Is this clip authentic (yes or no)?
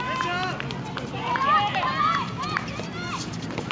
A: yes